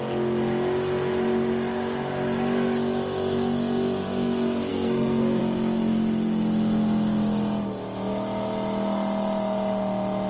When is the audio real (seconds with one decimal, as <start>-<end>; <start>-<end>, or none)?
0.0-4.7; 5.4-10.3